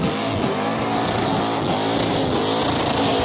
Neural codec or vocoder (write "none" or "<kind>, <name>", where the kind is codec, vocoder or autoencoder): none